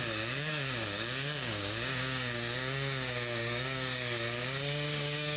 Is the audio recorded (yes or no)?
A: no